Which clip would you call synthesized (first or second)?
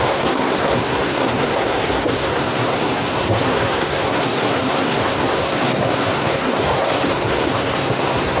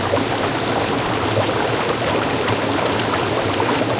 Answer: first